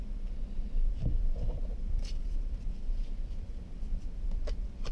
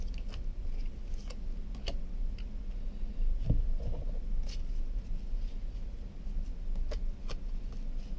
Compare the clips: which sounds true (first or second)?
second